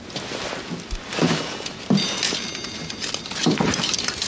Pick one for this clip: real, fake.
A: real